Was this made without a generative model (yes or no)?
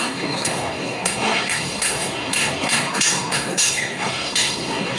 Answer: no